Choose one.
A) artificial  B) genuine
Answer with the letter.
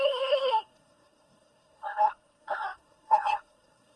A